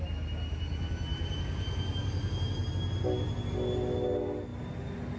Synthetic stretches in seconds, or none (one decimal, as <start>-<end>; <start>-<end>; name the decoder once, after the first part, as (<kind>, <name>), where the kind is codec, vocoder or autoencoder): 1.1-2.7 (vocoder, BigVGAN v2)